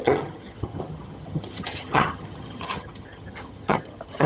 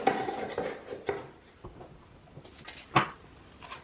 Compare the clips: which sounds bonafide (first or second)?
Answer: second